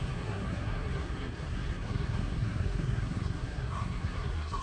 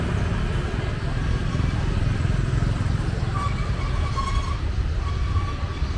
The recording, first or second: second